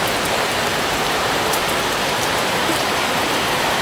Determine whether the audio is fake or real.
fake